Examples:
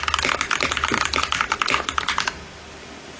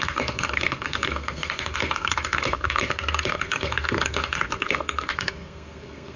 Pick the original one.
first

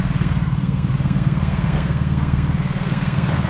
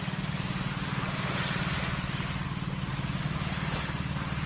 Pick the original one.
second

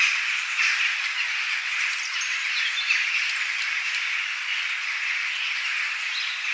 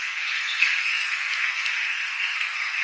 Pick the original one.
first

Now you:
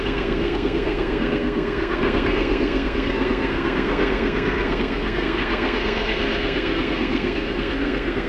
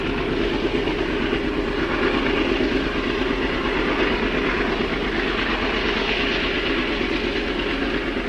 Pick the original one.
second